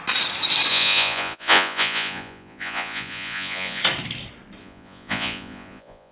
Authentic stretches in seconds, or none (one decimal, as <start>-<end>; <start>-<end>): 0.0-0.7; 3.8-4.6